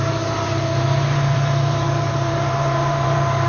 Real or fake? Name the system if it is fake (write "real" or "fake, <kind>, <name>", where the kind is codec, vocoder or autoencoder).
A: fake, vocoder, BigVGAN v2